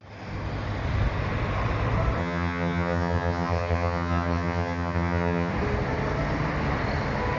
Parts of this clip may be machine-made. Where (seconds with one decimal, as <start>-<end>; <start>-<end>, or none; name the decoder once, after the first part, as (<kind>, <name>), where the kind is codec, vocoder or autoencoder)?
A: 2.2-5.5 (vocoder, HiFi-GAN)